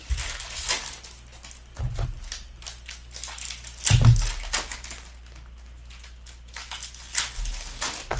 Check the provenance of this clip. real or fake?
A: real